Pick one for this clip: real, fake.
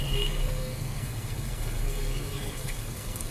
fake